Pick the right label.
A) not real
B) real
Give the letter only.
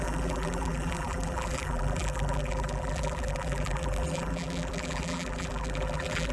A